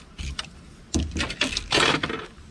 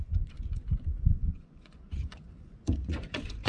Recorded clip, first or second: first